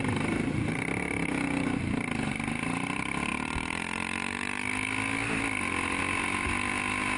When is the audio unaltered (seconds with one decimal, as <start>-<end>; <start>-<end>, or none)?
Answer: 0.0-7.2